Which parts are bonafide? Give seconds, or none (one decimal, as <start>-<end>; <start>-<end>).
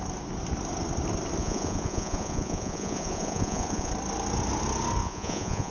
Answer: 0.0-1.4; 3.9-5.0